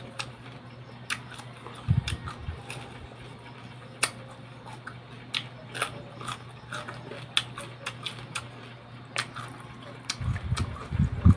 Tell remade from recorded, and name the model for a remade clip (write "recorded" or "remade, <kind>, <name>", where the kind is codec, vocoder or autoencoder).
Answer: recorded